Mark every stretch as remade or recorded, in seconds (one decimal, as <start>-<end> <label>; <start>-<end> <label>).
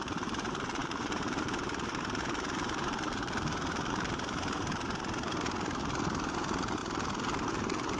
0.0-8.0 remade